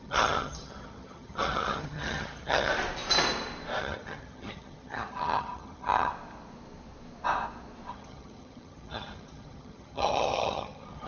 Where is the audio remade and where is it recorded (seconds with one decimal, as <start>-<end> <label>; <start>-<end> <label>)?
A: 0.0-2.7 remade; 2.7-3.8 recorded; 3.8-6.1 remade; 6.1-7.9 recorded; 7.9-11.1 remade